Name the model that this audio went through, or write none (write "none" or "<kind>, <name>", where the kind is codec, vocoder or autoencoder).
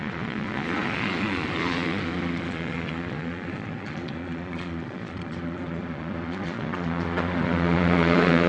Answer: vocoder, Vocos